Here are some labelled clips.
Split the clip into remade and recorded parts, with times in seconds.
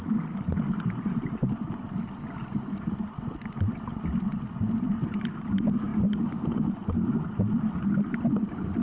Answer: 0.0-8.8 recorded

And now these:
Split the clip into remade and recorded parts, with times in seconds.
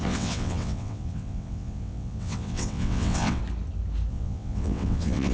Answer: 0.0-3.4 remade; 3.4-4.1 recorded; 4.1-5.3 remade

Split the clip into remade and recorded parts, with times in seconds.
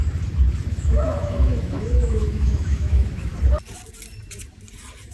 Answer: 0.0-0.7 recorded; 0.7-3.3 remade; 3.3-5.1 recorded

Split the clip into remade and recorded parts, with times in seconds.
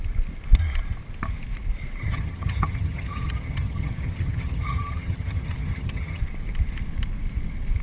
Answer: 0.0-2.0 recorded; 2.0-6.2 remade; 6.2-7.8 recorded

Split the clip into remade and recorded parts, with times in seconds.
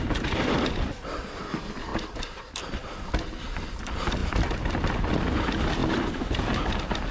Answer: 0.0-1.9 recorded; 1.9-2.6 remade; 2.6-4.2 recorded; 4.2-5.2 remade; 5.2-5.8 recorded; 5.8-7.1 remade